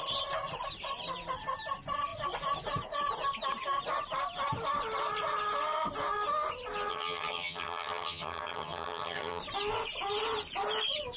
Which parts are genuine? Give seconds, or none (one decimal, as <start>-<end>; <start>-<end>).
0.0-6.9; 9.4-11.2